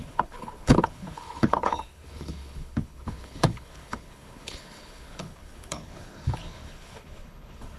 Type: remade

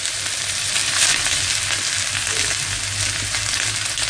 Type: recorded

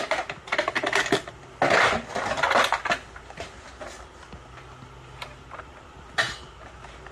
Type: recorded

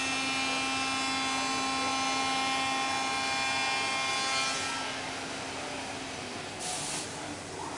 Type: recorded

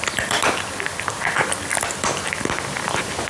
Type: recorded